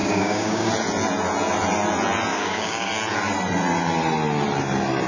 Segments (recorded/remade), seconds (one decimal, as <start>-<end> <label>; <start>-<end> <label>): 0.0-0.7 remade; 0.7-2.3 recorded; 2.3-2.9 remade; 2.9-5.1 recorded